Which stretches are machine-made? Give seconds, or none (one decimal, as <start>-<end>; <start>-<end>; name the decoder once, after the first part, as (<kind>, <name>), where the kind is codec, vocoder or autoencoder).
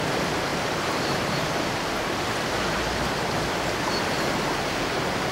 0.5-1.4 (vocoder, BigVGAN v2)